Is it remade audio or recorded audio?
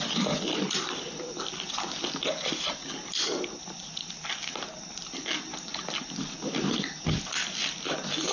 recorded